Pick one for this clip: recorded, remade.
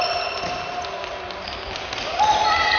recorded